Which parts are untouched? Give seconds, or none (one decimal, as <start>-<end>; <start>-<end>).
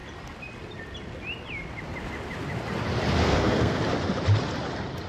0.0-3.2; 3.8-5.1